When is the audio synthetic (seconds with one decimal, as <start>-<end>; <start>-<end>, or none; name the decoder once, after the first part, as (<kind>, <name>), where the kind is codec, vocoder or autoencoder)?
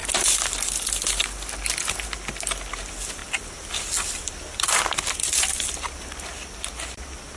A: 3.2-6.7 (vocoder, BigVGAN v2)